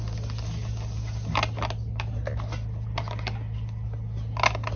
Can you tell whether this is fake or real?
real